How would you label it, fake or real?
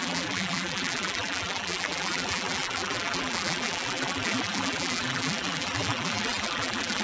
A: fake